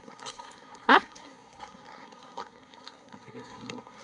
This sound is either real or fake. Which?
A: fake